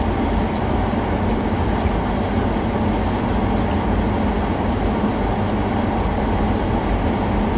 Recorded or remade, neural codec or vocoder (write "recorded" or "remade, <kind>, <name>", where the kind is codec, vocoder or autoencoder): recorded